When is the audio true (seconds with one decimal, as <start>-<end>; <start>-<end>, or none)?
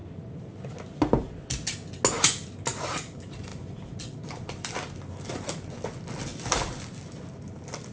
0.6-3.5; 4.7-6.3; 6.8-7.9